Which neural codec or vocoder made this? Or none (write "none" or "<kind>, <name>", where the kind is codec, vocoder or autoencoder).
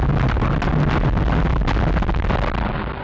none